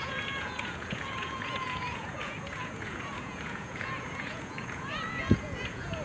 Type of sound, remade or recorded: remade